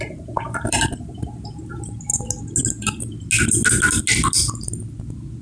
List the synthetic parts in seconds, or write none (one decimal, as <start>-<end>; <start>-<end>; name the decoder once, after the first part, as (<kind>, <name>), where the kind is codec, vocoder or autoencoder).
0.0-2.1 (vocoder, BigVGAN v2)